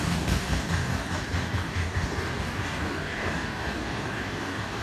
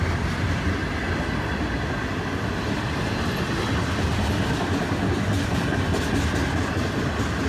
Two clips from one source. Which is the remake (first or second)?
first